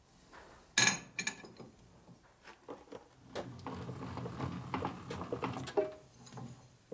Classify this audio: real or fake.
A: real